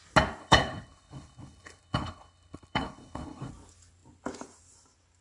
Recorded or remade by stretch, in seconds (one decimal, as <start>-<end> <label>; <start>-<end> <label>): 0.0-0.4 recorded; 0.4-3.5 remade; 3.5-5.2 recorded